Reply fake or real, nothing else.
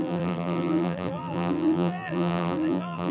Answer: fake